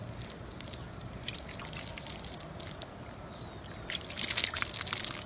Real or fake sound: real